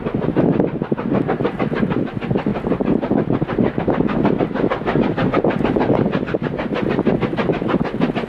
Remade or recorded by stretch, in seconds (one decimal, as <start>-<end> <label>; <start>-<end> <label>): 0.0-8.3 recorded